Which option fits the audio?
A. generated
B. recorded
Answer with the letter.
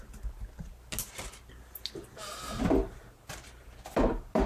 B